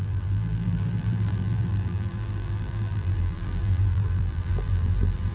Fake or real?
fake